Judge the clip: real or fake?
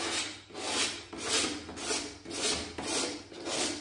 real